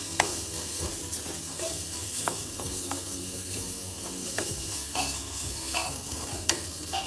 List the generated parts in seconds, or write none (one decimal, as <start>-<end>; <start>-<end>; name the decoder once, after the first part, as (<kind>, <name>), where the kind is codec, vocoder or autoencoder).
0.0-0.9 (codec, SNAC); 1.4-7.1